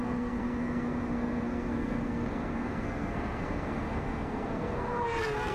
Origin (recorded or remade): remade